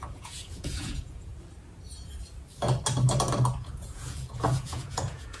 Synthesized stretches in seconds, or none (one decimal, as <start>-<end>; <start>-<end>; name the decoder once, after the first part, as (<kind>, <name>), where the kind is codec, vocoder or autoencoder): 0.0-1.3 (vocoder, Vocos); 3.6-5.4